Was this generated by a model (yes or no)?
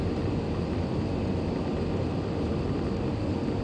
no